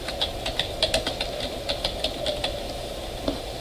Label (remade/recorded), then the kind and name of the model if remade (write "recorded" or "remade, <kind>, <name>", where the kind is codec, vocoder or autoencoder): recorded